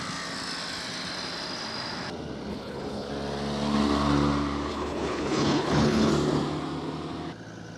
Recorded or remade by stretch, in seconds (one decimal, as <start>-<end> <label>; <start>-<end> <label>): 0.0-2.5 recorded; 2.5-3.1 remade; 3.1-4.7 recorded; 4.7-6.1 remade; 6.1-7.8 recorded